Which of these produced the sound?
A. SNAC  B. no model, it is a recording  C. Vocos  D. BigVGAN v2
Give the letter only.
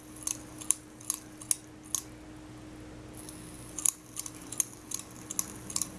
B